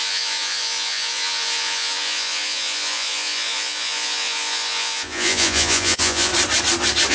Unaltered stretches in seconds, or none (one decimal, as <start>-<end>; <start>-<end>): 6.3-7.1